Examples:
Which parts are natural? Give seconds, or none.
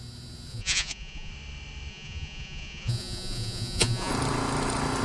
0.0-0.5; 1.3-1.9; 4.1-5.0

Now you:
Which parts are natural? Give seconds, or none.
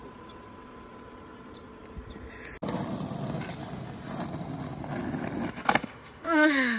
0.0-5.8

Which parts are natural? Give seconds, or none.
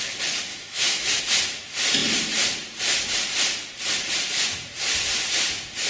0.0-0.5; 1.2-5.9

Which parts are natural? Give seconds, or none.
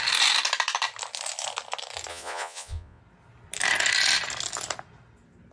0.0-2.1; 3.0-5.5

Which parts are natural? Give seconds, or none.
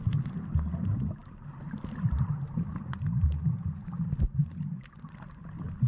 0.0-5.9